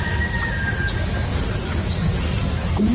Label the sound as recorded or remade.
recorded